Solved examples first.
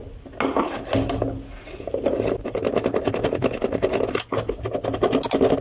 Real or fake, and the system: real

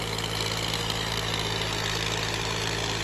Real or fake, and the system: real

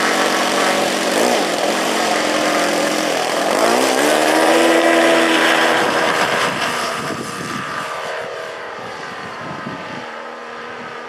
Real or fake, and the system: fake, vocoder, BigVGAN v2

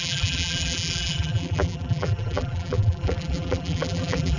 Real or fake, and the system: fake, vocoder, BigVGAN v2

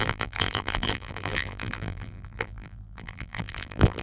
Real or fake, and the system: fake, vocoder, BigVGAN v2